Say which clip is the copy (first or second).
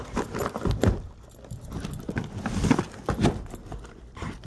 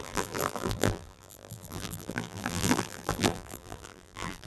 second